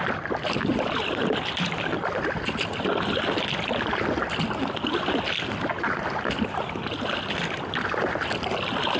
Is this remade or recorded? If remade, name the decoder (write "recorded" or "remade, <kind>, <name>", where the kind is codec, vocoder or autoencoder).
recorded